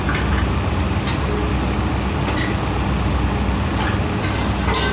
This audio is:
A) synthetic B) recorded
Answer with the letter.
B